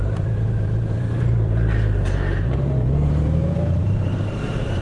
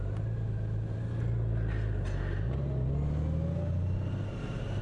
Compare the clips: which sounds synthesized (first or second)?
first